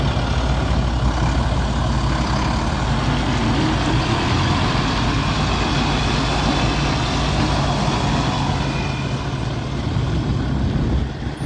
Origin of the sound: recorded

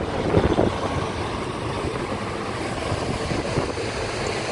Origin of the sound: recorded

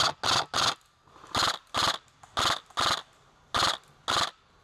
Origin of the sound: recorded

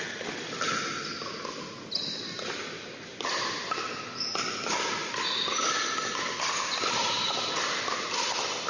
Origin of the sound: recorded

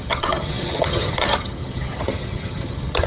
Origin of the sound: remade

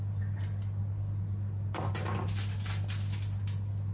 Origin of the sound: recorded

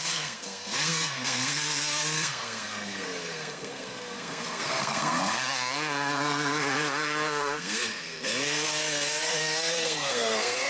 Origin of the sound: remade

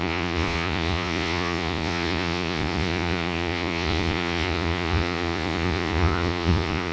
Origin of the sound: remade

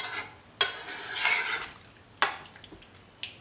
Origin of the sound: recorded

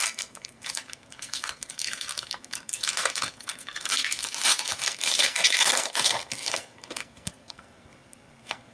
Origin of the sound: remade